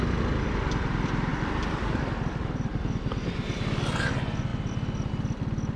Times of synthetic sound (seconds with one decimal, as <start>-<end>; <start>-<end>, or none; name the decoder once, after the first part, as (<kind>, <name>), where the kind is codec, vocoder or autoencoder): 1.3-3.8 (vocoder, BigVGAN v2); 4.5-5.1